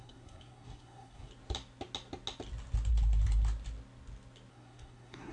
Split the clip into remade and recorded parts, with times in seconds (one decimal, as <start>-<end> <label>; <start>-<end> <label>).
0.0-1.3 remade; 1.3-4.5 recorded; 4.5-5.3 remade